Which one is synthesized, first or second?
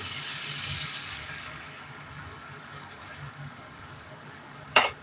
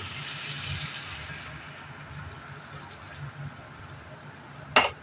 first